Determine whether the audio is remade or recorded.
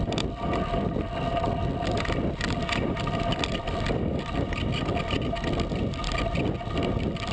recorded